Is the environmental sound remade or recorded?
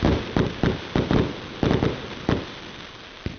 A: recorded